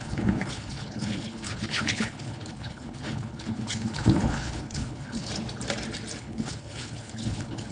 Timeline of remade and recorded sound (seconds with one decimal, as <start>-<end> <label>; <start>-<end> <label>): 0.0-5.3 remade; 5.3-6.2 recorded; 6.2-7.7 remade